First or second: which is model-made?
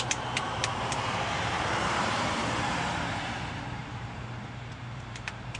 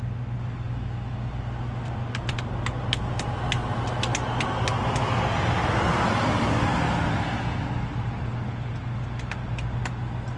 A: first